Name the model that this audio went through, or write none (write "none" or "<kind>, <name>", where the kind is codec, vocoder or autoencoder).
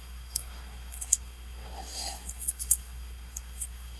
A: codec, SNAC